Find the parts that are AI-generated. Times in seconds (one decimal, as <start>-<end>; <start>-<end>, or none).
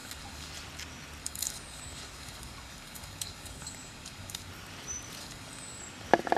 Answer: 0.0-0.5; 1.2-4.5; 5.2-5.8